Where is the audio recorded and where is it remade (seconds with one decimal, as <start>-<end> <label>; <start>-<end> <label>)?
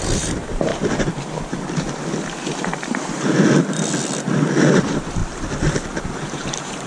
0.0-0.7 remade; 0.7-4.8 recorded; 4.8-5.2 remade; 5.2-6.1 recorded; 6.1-6.9 remade